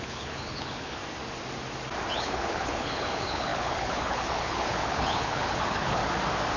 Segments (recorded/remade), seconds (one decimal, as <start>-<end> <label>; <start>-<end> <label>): 0.0-1.0 remade; 1.0-2.1 recorded; 2.1-6.0 remade; 6.0-6.6 recorded